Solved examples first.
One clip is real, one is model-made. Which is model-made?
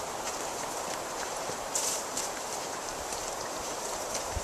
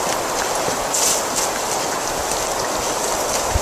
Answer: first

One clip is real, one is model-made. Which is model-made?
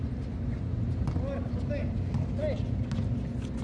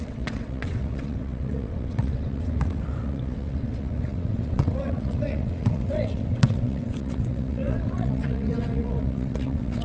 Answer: second